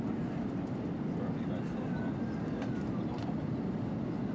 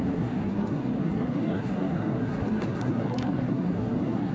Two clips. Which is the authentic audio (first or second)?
first